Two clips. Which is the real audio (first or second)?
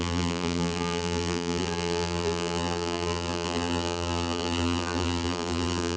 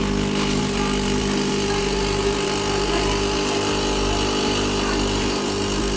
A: second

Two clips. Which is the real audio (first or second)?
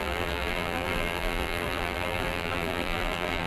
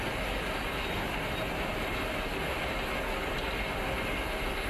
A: second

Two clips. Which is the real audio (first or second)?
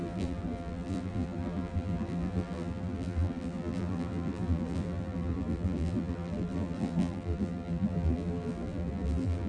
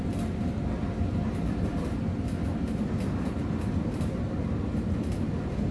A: second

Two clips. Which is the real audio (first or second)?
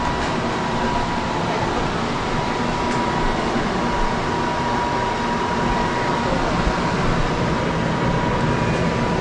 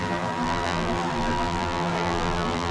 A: first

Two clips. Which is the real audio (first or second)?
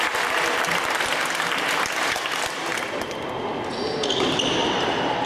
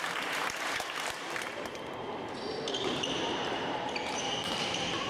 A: first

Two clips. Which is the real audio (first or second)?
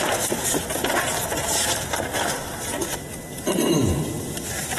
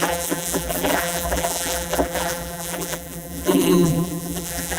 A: first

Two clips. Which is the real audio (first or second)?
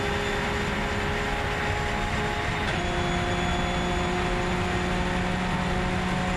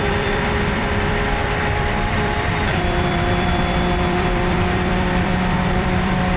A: first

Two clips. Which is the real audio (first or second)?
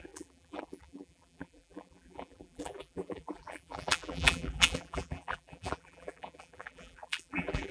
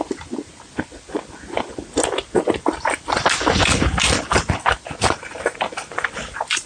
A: second